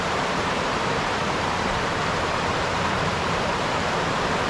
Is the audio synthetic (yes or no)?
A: yes